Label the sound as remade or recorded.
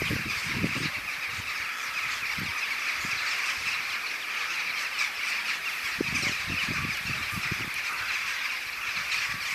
recorded